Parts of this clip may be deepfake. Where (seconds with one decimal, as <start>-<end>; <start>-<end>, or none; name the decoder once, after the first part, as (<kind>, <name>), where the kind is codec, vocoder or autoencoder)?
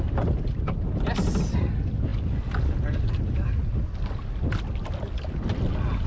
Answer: none